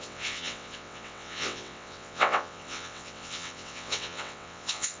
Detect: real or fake fake